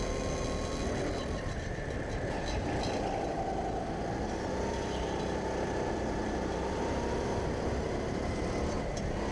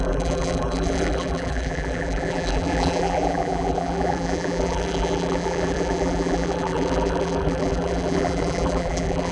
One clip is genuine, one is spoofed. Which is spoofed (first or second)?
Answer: second